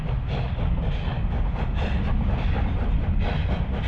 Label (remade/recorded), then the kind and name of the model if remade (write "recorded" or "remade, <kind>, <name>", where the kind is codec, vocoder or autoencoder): recorded